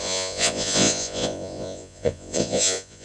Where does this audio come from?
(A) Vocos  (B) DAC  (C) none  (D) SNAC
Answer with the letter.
A